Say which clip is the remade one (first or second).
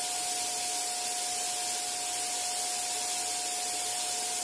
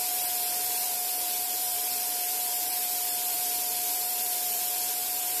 second